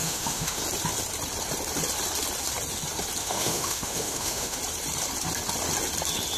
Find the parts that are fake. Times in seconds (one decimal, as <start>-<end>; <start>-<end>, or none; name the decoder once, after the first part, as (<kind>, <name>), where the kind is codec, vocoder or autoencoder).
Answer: 0.0-0.6 (autoencoder, DAC-VAE); 3.2-4.6